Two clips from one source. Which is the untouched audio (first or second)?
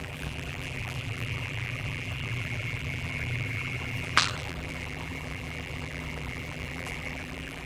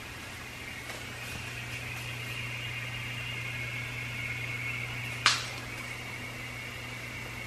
second